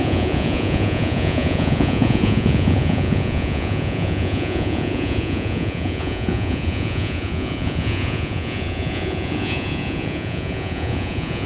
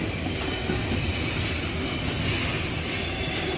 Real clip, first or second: second